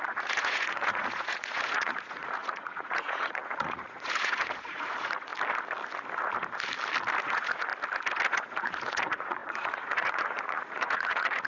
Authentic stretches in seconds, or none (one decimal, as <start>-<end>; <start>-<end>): 5.3-7.2; 7.7-8.3